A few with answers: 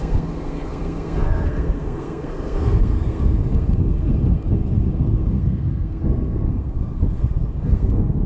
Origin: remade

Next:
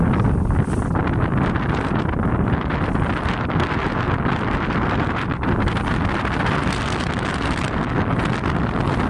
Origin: recorded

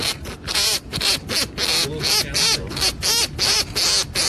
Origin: recorded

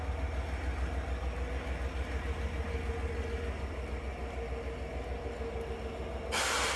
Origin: recorded